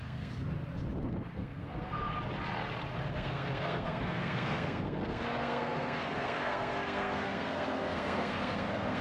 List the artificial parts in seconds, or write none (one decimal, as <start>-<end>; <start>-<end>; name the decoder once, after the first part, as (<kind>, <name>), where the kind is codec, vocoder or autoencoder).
0.0-0.4 (codec, SNAC); 1.0-2.1; 3.1-9.0